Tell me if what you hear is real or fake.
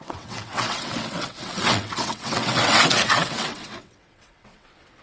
fake